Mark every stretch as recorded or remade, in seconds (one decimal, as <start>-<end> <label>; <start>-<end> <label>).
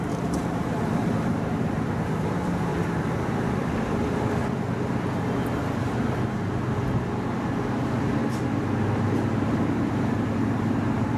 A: 0.0-2.7 remade; 2.7-7.7 recorded; 7.7-8.2 remade; 8.2-9.3 recorded; 9.3-11.2 remade